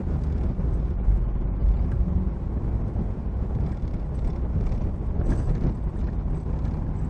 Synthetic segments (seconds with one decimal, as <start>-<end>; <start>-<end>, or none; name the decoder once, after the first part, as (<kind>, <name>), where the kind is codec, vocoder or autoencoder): none